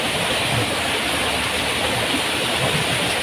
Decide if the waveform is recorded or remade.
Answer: recorded